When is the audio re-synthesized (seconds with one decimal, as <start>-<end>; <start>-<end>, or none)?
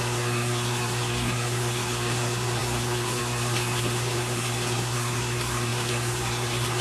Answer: 0.0-6.8